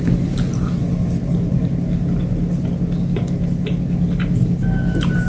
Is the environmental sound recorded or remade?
recorded